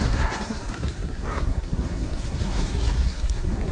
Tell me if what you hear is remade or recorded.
remade